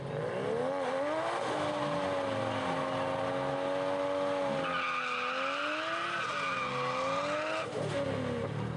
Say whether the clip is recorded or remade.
recorded